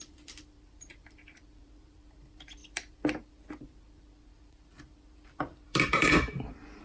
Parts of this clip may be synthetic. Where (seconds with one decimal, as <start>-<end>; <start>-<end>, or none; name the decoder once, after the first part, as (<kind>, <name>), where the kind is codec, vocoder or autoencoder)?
0.0-6.8 (vocoder, BigVGAN v2)